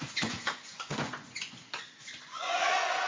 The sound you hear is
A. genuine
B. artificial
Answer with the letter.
B